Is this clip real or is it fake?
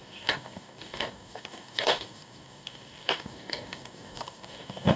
fake